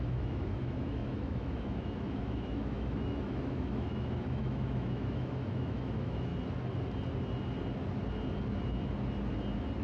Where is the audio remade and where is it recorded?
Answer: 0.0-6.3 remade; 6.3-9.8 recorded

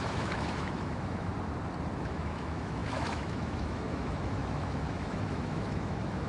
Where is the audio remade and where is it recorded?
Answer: 0.0-1.3 remade; 1.3-2.0 recorded; 2.0-6.3 remade

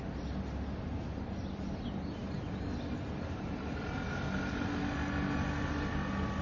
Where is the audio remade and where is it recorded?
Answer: 0.0-6.4 recorded

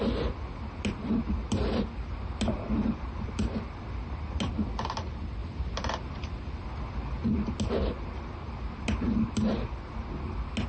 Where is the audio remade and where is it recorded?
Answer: 0.0-10.7 recorded

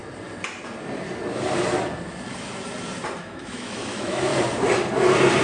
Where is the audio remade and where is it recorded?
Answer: 0.0-3.2 recorded; 3.2-4.3 remade; 4.3-5.4 recorded

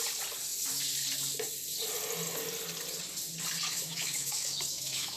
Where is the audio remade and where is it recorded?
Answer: 0.0-3.7 recorded; 3.7-5.2 remade

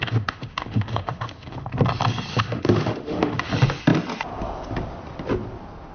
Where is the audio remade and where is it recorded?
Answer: 0.0-1.7 remade; 1.7-2.3 recorded; 2.3-3.5 remade; 3.5-5.9 recorded